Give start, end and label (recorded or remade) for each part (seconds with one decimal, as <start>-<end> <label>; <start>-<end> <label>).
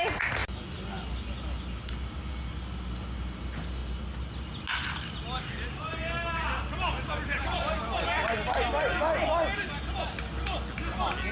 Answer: 0.0-11.3 recorded